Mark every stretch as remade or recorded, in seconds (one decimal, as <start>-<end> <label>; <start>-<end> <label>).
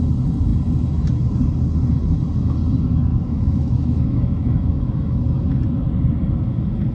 0.0-3.1 recorded; 3.1-5.2 remade; 5.2-6.9 recorded